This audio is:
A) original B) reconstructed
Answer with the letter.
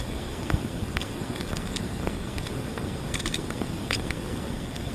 B